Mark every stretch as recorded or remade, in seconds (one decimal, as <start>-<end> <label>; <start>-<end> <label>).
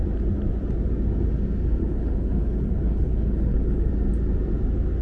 0.0-1.8 recorded; 1.8-3.9 remade; 3.9-5.0 recorded